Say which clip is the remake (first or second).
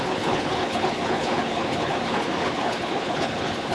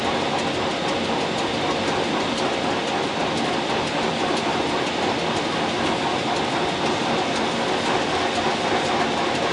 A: first